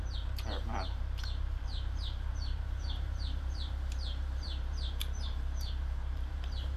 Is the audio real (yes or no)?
no